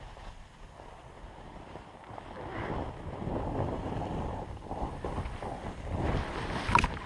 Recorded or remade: recorded